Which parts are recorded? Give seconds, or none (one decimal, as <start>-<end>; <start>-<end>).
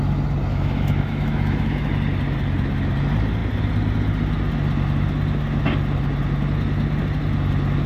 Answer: 0.0-0.5; 1.9-7.9